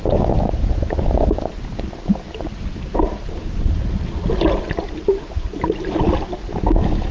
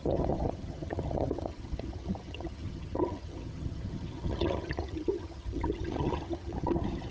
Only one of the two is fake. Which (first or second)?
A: second